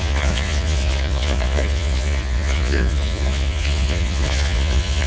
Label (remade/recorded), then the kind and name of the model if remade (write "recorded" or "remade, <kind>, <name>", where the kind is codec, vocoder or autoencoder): remade, vocoder, Vocos